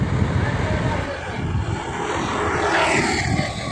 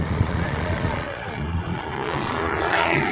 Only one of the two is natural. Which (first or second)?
first